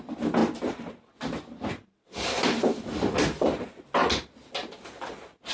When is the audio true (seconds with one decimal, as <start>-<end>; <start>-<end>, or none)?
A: 0.0-5.5

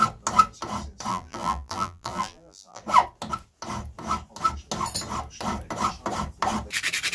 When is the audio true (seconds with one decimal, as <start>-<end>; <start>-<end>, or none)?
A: 0.0-1.1; 2.8-7.1

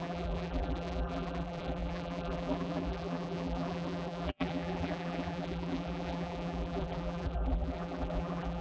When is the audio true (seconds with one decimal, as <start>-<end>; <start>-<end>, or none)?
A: none